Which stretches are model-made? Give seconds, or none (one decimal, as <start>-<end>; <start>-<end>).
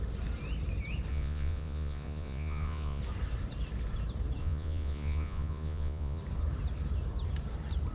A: 1.1-3.0; 4.4-6.2